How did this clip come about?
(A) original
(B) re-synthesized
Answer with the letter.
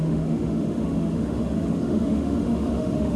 B